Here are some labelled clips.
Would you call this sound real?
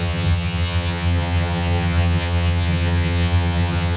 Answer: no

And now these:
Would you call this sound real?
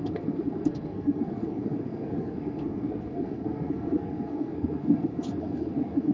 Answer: no